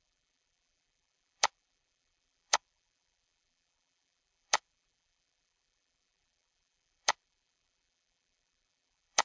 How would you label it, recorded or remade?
remade